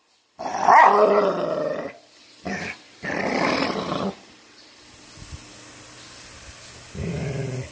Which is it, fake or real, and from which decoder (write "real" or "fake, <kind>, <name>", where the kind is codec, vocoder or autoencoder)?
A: real